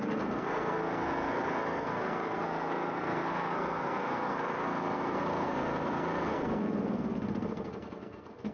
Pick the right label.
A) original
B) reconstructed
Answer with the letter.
B